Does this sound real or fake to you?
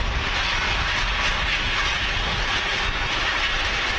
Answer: real